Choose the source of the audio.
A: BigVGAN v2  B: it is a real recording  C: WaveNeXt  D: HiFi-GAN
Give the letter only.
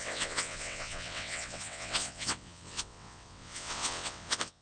C